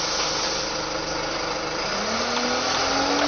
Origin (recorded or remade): recorded